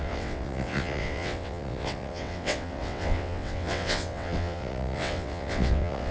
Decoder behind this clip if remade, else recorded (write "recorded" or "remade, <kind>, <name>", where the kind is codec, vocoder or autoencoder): remade, vocoder, WaveNeXt